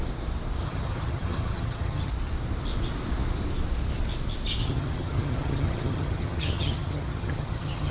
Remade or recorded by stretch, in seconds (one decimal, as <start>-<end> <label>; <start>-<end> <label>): 0.0-0.6 recorded; 0.6-2.1 remade; 2.1-4.6 recorded; 4.6-7.9 remade

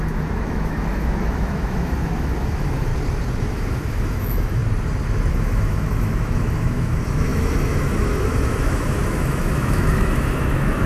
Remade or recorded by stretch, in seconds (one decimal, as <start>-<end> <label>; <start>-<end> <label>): 0.0-2.9 remade; 2.9-3.5 recorded; 3.5-4.6 remade; 4.6-5.3 recorded; 5.3-10.9 remade

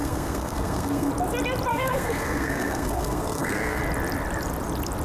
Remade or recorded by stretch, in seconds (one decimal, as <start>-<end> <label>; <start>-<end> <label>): 0.0-1.1 remade; 1.1-1.7 recorded; 1.7-3.8 remade; 3.8-5.0 recorded

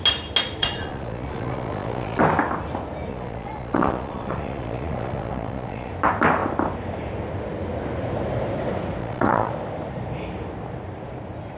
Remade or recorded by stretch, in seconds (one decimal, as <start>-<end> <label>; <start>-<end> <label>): 0.0-0.6 recorded; 0.6-2.2 remade; 2.2-3.1 recorded; 3.1-5.9 remade; 5.9-9.0 recorded; 9.0-9.5 remade; 9.5-11.6 recorded

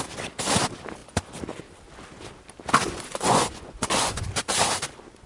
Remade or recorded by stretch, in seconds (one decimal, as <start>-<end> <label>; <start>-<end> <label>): 0.0-2.8 recorded; 2.8-4.2 remade; 4.2-5.3 recorded

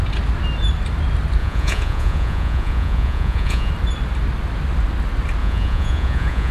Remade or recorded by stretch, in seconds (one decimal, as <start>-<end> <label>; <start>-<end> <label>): 0.0-1.4 recorded; 1.4-3.7 remade; 3.7-5.4 recorded; 5.4-6.5 remade

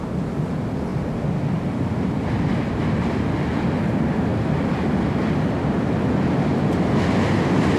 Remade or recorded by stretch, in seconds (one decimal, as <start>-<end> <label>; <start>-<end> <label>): 0.0-0.9 recorded; 0.9-2.5 remade; 2.5-4.3 recorded; 4.3-6.8 remade; 6.8-7.8 recorded

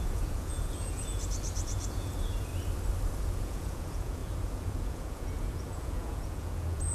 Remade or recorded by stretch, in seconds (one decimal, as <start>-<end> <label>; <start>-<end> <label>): 0.0-2.5 remade; 2.5-3.2 recorded; 3.2-6.9 remade